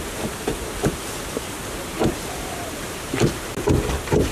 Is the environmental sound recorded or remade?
recorded